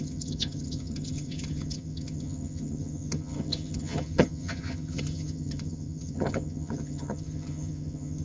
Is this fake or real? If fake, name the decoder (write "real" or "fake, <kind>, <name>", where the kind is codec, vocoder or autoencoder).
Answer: fake, vocoder, HiFi-GAN